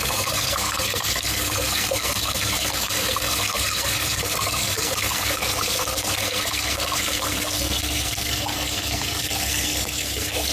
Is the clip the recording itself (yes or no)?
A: no